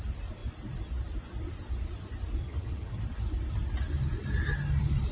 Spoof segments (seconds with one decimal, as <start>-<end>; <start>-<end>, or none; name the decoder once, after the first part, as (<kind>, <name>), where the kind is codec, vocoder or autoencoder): 2.4-3.0 (vocoder, HiFi-GAN)